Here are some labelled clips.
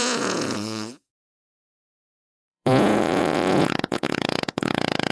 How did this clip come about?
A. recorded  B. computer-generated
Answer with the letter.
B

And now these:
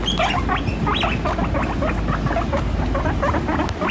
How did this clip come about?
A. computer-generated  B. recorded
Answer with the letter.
B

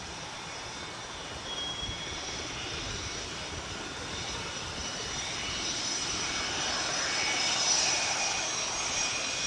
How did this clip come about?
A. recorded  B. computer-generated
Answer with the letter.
A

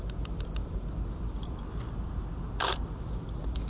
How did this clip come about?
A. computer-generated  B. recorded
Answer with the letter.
B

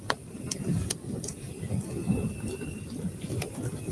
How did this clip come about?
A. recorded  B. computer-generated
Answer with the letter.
A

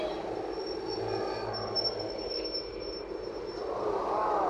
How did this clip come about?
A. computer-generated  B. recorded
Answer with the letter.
B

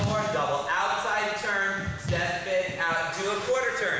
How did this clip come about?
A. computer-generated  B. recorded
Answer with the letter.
B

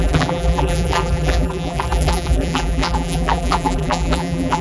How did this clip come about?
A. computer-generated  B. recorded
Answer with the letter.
A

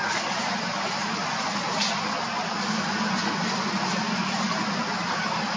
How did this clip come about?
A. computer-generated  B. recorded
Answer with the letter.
B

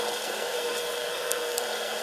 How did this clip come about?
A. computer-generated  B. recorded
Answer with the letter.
A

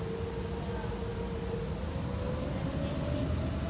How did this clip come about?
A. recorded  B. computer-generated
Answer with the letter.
A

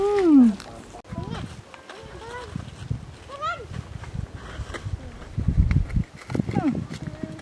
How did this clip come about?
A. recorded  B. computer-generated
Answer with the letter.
A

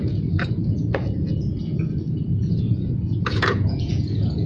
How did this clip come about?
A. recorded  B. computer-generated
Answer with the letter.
B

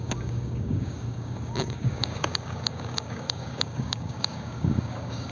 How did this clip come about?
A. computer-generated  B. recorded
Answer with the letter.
A